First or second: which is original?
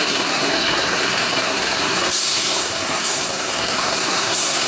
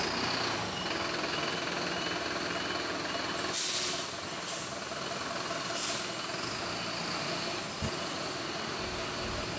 second